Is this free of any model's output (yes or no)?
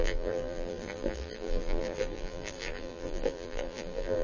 no